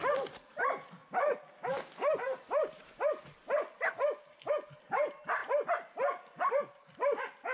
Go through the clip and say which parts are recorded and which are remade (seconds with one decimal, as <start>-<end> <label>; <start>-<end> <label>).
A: 0.0-7.5 recorded